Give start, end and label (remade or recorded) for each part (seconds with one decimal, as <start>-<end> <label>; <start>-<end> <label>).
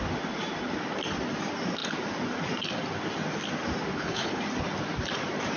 0.0-3.9 recorded; 3.9-4.4 remade; 4.4-5.6 recorded